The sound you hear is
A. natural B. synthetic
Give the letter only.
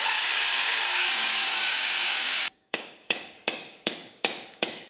B